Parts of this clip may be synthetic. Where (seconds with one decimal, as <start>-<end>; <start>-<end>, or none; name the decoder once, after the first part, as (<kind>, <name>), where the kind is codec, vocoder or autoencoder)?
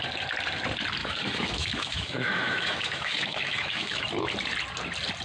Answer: 1.0-4.1 (autoencoder, DAC-VAE)